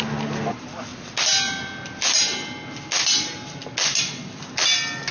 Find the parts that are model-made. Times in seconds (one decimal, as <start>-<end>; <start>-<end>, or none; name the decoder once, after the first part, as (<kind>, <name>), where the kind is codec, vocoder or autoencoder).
none